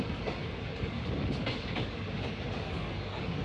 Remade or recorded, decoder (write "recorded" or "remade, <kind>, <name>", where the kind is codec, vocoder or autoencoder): remade, codec, DAC